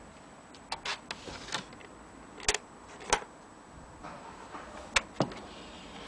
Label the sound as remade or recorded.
recorded